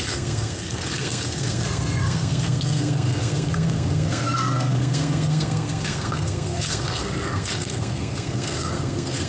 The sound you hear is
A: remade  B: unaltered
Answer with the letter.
A